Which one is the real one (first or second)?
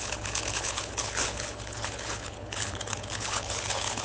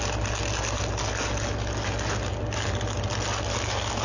second